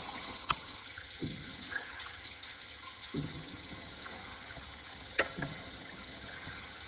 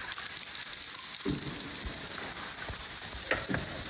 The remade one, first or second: first